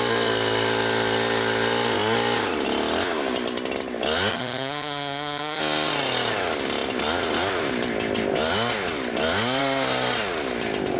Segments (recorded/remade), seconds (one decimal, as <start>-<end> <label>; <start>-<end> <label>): 0.0-4.3 recorded; 4.3-5.6 remade; 5.6-11.0 recorded